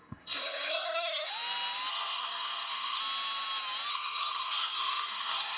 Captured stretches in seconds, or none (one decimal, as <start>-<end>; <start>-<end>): 1.3-1.9; 3.0-3.9

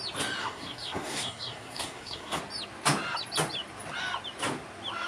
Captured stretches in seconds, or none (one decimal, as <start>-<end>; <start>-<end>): 0.0-0.4; 2.4-5.1

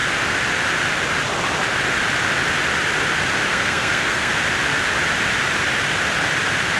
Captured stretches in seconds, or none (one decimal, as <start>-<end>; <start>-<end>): 0.0-3.5; 4.3-6.8

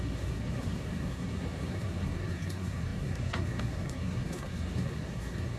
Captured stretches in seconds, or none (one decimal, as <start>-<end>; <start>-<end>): none

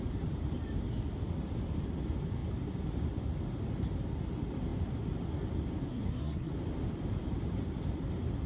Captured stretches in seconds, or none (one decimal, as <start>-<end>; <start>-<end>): 0.0-5.9; 6.5-8.5